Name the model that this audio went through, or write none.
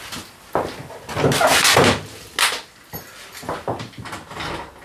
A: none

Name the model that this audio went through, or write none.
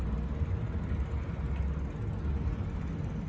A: none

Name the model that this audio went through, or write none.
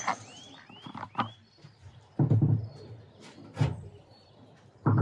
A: vocoder, BigVGAN v2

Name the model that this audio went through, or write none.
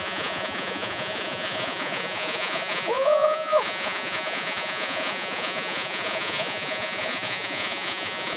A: vocoder, Vocos